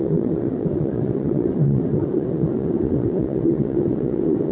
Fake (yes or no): yes